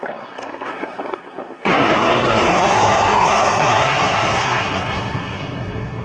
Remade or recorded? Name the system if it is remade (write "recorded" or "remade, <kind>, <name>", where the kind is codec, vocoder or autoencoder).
remade, codec, SNAC